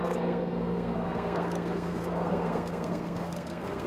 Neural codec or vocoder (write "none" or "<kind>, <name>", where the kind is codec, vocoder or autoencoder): codec, SNAC